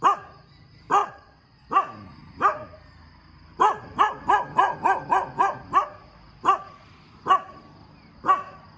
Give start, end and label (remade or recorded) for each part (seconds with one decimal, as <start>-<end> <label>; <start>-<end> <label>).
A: 0.0-1.0 recorded; 1.0-1.7 remade; 1.7-8.8 recorded